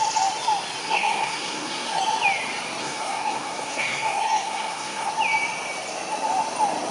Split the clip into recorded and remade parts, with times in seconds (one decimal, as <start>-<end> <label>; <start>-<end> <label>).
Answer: 0.0-0.8 recorded; 0.8-2.0 remade; 2.0-2.8 recorded; 2.8-5.1 remade; 5.1-6.9 recorded